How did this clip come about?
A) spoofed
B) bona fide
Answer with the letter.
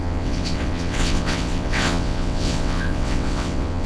A